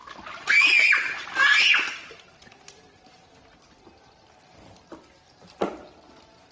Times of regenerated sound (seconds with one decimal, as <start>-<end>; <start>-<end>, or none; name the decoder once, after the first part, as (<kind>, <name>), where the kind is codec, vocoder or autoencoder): none